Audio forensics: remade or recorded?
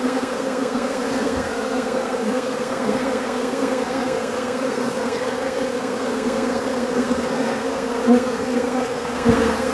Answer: remade